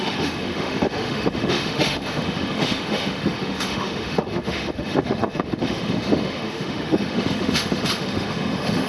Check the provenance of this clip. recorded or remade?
remade